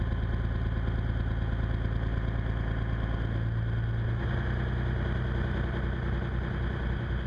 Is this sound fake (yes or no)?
no